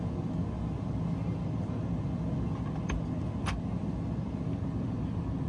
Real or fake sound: real